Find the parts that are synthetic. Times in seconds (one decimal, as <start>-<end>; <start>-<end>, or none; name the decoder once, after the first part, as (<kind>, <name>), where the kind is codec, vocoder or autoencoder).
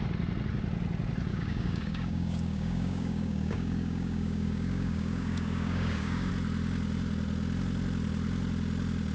1.3-6.3 (codec, DAC)